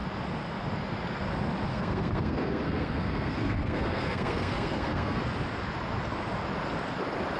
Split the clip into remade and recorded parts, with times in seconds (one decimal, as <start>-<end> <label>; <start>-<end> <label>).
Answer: 0.0-1.7 recorded; 1.7-5.2 remade; 5.2-7.4 recorded